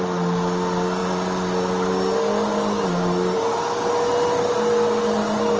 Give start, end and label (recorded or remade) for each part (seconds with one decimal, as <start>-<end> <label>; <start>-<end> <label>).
0.0-5.6 recorded